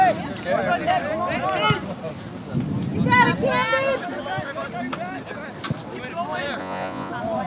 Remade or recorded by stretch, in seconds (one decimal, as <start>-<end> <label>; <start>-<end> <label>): 0.0-6.6 recorded; 6.6-7.1 remade; 7.1-7.5 recorded